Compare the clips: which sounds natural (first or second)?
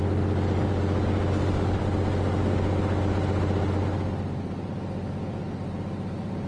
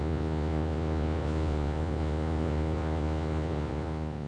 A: first